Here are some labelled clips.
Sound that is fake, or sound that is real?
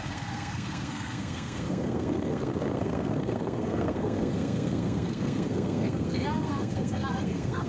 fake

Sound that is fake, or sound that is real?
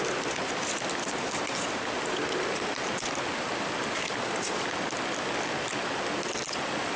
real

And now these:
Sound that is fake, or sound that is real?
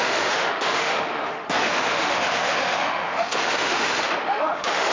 fake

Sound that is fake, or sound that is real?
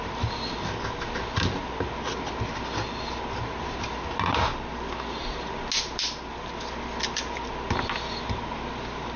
real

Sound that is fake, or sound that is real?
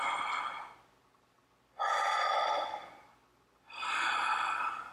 real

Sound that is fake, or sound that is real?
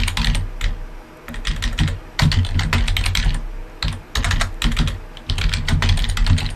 real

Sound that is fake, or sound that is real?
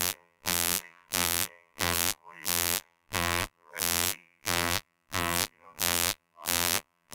fake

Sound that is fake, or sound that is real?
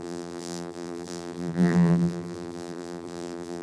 fake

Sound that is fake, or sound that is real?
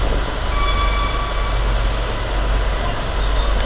real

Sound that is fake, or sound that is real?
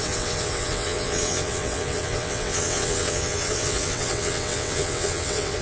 fake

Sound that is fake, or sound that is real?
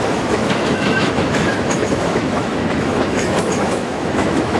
fake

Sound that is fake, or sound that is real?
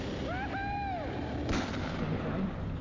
real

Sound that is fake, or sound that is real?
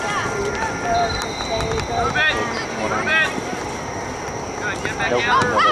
real